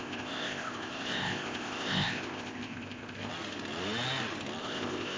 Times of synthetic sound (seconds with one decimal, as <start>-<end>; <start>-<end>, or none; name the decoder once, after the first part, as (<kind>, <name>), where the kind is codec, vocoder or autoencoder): 0.0-3.3 (codec, ZipCodec); 4.6-5.2